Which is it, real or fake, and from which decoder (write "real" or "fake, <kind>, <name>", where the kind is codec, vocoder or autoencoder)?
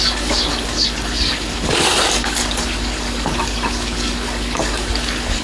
fake, codec, DAC